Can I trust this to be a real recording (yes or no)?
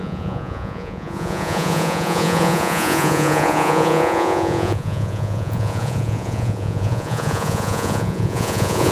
no